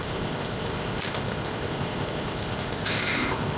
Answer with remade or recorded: remade